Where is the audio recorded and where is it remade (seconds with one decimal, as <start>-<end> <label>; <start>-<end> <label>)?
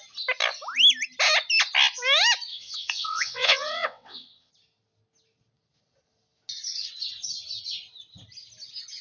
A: 0.0-2.5 recorded; 2.5-4.5 remade; 4.5-9.0 recorded